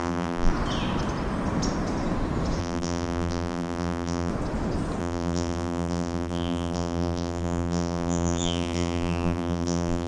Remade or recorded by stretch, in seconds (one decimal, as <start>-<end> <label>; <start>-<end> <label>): 0.0-0.5 remade; 0.5-2.6 recorded; 2.6-4.3 remade; 4.3-5.0 recorded; 5.0-10.1 remade